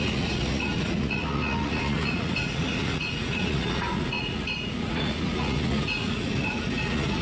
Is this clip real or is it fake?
fake